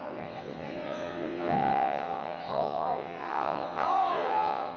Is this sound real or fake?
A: fake